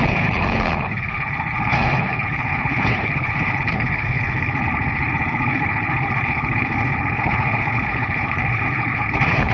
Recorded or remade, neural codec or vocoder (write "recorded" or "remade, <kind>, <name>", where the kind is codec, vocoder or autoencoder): remade, codec, HILCodec